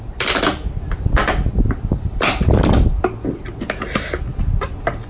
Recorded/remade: recorded